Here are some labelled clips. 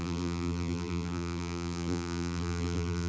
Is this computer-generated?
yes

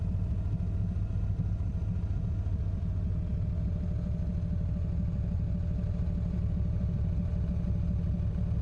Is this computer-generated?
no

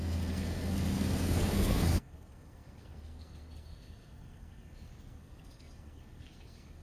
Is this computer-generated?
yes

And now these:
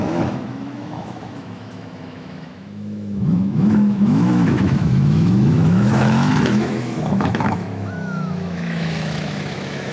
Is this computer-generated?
yes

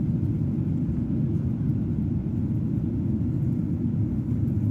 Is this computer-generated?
no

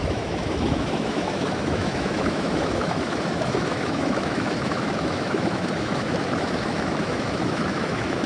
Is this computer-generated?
yes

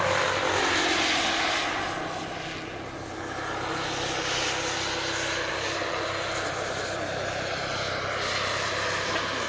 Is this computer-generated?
no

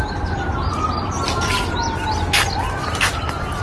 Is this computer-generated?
no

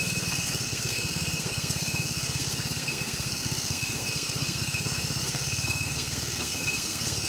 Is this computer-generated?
yes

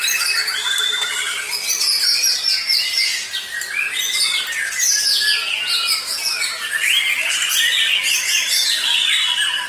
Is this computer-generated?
no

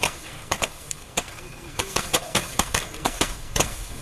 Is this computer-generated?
yes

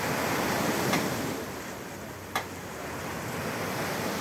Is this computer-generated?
no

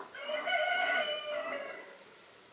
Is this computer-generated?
no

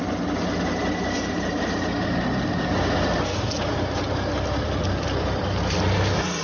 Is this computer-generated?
no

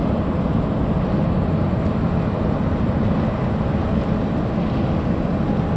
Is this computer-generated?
no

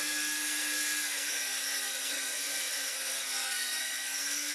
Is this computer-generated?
yes